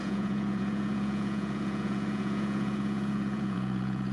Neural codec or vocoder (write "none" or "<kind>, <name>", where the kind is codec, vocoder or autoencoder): vocoder, Vocos